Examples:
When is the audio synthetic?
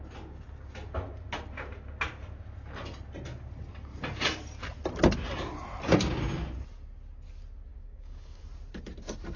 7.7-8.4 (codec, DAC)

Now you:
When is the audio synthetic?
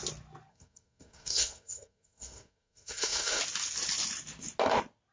0.5-3.4 (codec, SNAC)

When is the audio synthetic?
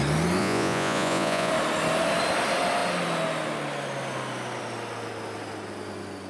0.4-1.5 (vocoder, Vocos)